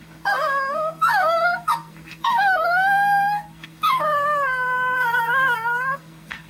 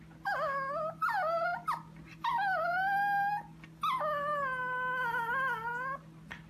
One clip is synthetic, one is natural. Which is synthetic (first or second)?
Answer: first